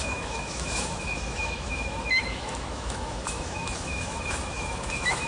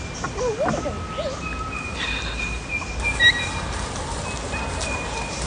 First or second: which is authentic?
second